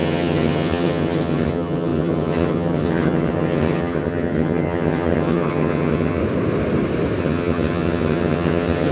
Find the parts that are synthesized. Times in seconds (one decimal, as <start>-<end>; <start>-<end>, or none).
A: 0.0-6.2; 7.2-8.9